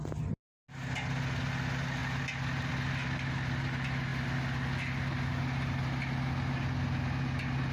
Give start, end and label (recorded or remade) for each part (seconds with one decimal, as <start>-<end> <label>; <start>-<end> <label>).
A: 0.0-7.7 recorded